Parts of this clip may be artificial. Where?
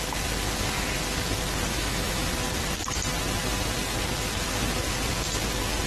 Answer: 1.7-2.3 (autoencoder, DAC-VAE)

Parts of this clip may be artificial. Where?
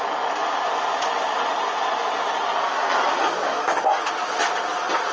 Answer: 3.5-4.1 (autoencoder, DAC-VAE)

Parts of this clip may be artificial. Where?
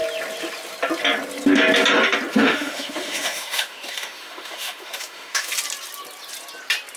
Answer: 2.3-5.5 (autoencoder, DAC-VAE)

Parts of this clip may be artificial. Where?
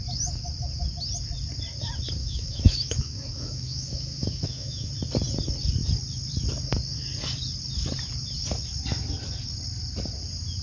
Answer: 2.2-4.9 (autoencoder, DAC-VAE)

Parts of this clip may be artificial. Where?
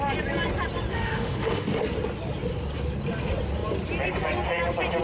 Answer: 0.9-1.8 (autoencoder, DAC-VAE)